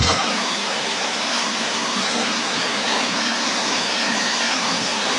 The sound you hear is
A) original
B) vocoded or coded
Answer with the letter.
B